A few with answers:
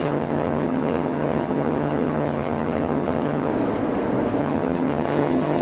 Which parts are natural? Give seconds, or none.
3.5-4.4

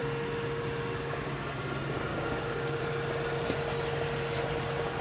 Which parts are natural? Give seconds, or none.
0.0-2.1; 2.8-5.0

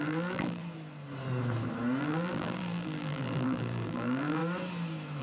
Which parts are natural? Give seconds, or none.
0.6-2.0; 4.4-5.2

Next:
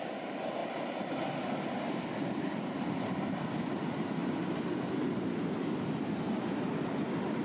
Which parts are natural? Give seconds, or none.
4.2-7.0

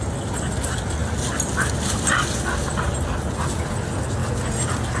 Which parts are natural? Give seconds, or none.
0.0-5.0